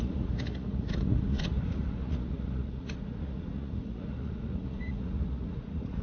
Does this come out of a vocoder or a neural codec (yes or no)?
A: yes